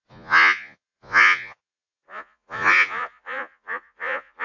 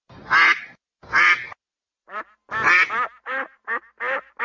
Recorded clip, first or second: second